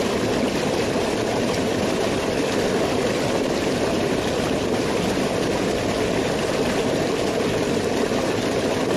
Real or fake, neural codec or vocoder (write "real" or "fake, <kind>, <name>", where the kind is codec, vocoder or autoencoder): real